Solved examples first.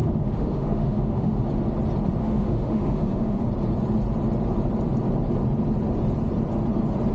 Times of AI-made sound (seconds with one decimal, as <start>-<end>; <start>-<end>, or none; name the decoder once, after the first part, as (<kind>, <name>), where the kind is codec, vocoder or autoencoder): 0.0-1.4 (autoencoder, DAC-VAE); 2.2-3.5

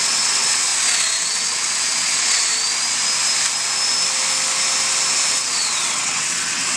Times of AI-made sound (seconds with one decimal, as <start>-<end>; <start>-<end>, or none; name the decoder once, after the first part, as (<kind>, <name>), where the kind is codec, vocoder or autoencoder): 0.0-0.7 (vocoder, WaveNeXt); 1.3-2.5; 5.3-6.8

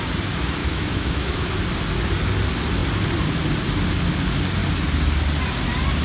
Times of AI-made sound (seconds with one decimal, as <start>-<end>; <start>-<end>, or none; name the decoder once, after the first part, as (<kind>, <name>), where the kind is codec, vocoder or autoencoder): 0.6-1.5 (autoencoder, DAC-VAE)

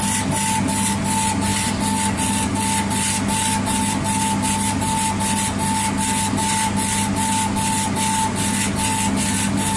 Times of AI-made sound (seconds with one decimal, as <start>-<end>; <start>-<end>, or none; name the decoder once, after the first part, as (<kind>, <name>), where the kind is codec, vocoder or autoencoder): none